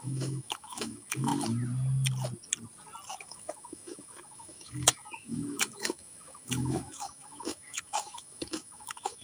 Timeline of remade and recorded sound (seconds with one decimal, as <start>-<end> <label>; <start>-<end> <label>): 0.0-1.3 remade; 1.3-3.2 recorded; 3.2-9.2 remade

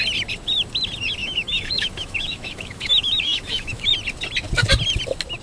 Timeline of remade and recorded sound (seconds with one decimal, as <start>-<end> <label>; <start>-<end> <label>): 0.0-1.2 recorded; 1.2-3.9 remade; 3.9-5.4 recorded

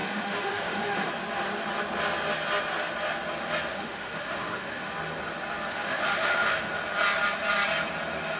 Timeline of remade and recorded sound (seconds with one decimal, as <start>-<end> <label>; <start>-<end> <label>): 0.0-1.1 remade; 1.1-3.7 recorded; 3.7-4.9 remade; 4.9-5.7 recorded; 5.7-6.7 remade; 6.7-8.4 recorded